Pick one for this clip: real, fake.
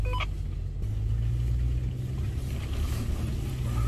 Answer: real